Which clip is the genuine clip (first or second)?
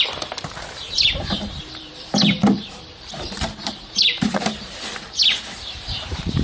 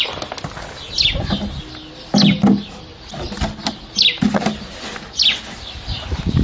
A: second